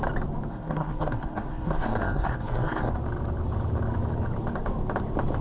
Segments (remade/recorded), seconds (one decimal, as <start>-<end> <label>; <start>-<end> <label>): 0.0-0.5 recorded; 0.5-2.9 remade; 2.9-5.4 recorded